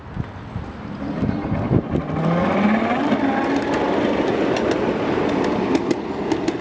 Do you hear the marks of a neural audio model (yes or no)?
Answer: no